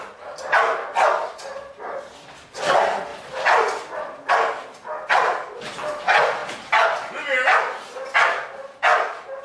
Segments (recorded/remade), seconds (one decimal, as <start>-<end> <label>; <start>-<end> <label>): 0.0-3.1 recorded; 3.1-4.3 remade; 4.3-8.9 recorded; 8.9-9.4 remade